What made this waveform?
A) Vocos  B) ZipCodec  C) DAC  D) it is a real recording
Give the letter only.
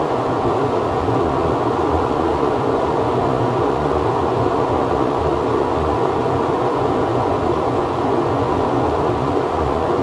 A